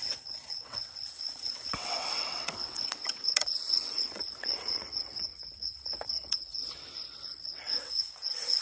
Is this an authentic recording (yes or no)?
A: no